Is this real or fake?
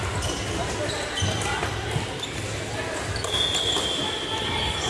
real